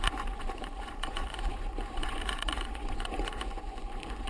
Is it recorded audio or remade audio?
remade